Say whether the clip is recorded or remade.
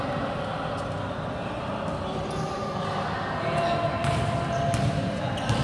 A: recorded